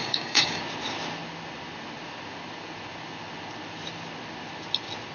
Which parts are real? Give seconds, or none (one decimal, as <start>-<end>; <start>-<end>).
0.6-5.1